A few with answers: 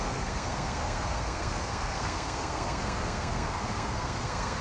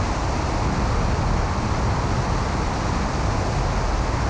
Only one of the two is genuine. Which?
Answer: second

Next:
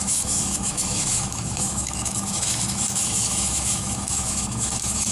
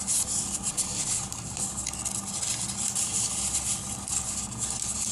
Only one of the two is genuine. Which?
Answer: second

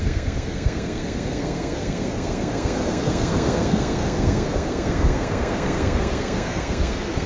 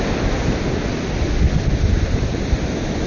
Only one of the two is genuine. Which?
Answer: second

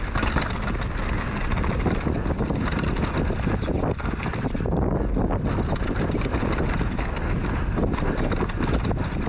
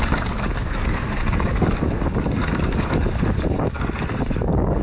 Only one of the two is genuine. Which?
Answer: first